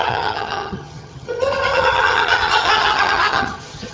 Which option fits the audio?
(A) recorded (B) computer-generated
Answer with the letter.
B